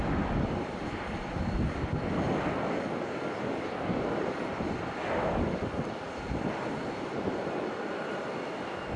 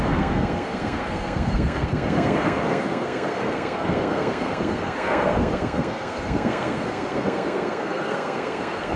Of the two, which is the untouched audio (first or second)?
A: first